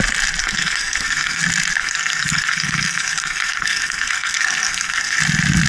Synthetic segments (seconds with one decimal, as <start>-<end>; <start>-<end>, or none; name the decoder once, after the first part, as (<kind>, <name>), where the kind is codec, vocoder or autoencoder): 0.4-1.4 (codec, SNAC); 1.8-5.2